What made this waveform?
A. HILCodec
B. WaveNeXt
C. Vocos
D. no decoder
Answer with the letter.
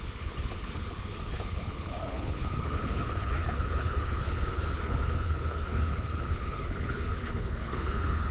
A